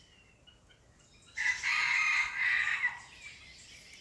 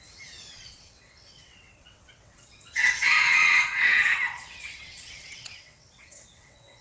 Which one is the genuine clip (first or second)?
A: first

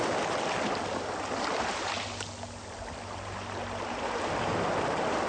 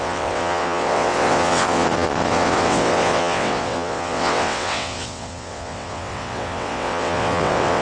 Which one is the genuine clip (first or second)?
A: first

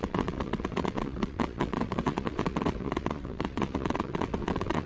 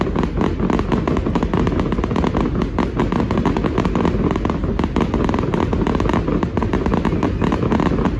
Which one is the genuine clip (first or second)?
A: second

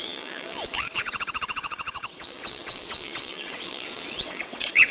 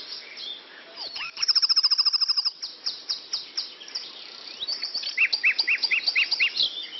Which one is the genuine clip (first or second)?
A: second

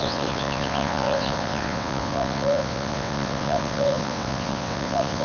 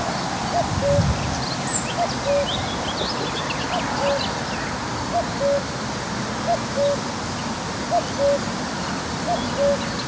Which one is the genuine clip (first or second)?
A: second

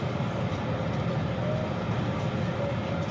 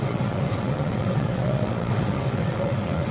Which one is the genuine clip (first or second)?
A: first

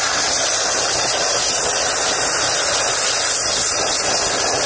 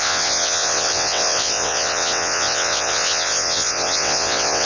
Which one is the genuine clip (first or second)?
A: first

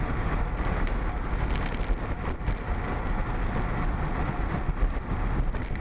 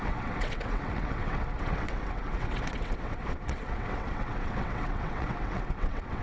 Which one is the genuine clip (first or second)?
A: first